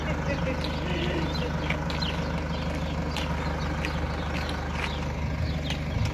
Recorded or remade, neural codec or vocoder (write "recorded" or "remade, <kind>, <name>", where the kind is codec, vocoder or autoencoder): recorded